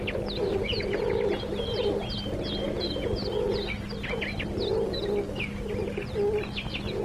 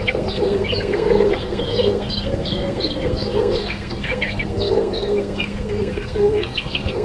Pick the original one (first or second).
first